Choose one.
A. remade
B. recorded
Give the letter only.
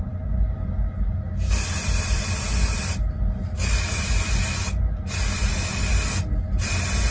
B